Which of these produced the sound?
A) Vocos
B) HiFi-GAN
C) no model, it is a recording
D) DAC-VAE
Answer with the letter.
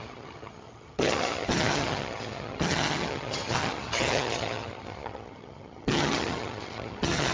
B